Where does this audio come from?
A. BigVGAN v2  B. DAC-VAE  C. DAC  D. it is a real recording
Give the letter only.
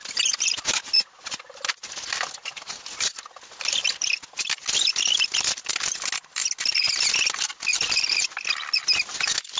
D